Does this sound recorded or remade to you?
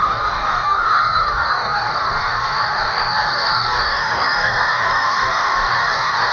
remade